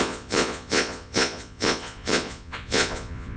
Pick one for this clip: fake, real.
fake